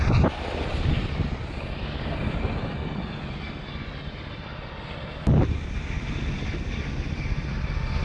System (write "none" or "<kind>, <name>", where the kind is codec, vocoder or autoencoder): none